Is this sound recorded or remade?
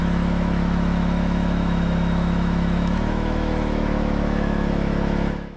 remade